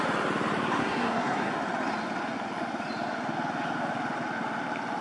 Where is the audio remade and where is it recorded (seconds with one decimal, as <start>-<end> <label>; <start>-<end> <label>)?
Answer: 0.0-0.8 recorded; 0.8-1.5 remade; 1.5-5.0 recorded